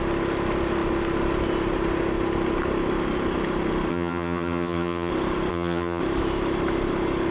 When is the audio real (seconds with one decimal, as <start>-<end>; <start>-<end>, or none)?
0.0-3.9; 5.1-5.5; 6.0-7.3